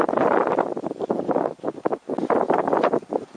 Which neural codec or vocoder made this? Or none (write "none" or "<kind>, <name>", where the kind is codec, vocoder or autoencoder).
none